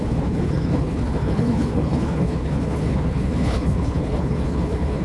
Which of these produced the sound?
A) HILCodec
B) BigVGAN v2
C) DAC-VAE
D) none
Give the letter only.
A